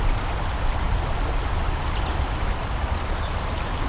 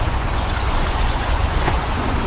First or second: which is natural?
first